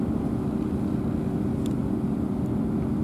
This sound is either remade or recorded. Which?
recorded